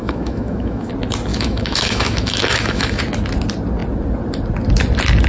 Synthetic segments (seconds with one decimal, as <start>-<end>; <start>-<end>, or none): 0.0-0.9; 1.3-3.0